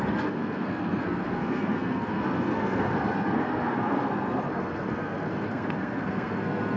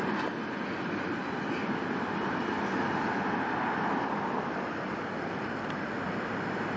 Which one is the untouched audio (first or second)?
second